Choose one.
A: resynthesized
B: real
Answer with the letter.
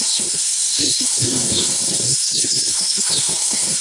A